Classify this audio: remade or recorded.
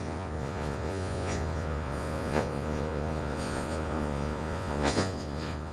remade